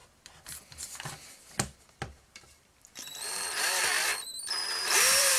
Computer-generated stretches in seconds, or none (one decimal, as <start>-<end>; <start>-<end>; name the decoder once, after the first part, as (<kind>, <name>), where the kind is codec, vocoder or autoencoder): 1.9-5.4 (vocoder, BigVGAN v2)